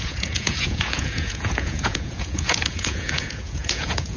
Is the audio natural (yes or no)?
no